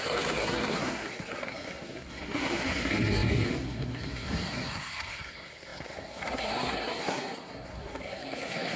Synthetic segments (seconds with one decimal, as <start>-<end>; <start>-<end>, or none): 0.0-8.8